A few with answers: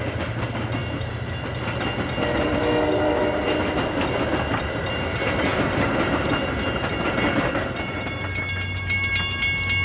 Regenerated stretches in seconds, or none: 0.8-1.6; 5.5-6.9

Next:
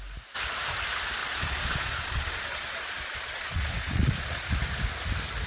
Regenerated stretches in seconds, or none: 1.2-4.5